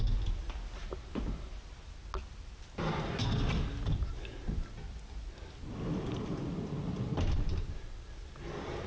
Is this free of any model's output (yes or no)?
yes